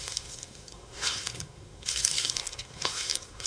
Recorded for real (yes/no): no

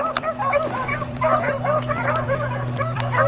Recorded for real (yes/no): no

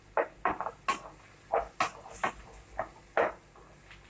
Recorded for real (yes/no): yes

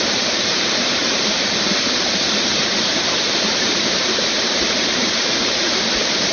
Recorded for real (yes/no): no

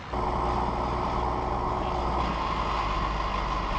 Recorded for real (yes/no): yes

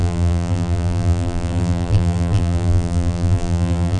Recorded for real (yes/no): no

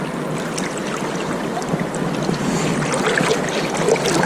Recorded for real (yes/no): yes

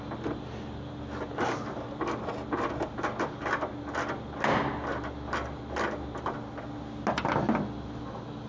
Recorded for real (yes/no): yes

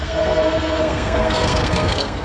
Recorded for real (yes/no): no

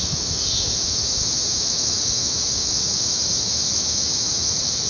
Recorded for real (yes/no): no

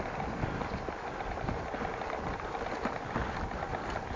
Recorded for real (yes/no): yes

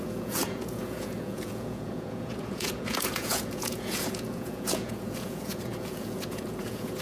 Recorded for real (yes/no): no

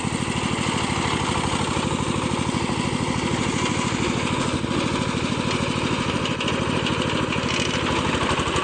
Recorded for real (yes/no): yes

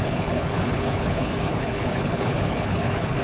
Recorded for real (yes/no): no